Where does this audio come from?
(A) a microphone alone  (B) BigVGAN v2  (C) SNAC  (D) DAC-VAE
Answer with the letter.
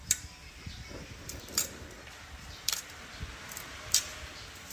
B